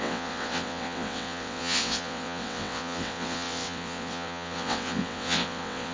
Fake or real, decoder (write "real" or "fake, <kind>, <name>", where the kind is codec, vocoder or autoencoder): fake, vocoder, WaveNeXt